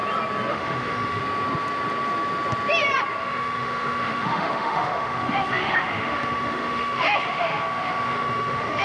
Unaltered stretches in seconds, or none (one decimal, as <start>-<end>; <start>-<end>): 0.0-0.5; 1.2-3.2

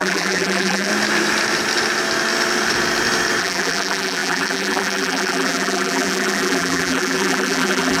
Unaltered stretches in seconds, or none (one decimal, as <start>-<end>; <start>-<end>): 0.9-3.4

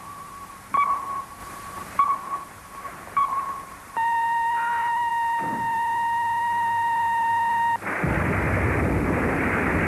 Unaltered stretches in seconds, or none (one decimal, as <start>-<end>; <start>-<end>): 5.1-9.9

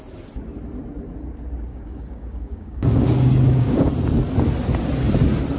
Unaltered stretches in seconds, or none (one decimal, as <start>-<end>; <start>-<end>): 0.0-1.7; 3.9-5.6

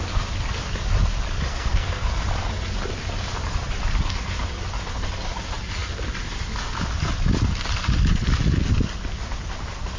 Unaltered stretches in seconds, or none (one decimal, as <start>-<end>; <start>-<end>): 0.0-1.5; 2.1-10.0

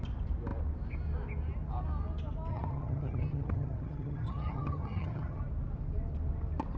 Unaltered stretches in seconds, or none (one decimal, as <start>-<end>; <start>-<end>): 0.0-2.5; 5.4-6.8

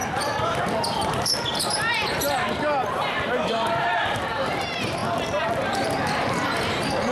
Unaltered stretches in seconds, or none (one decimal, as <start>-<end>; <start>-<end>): 5.0-5.7

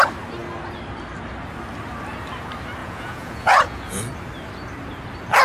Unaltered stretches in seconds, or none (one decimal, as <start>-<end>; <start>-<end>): 0.0-2.8; 4.0-5.4